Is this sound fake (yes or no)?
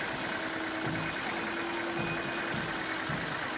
no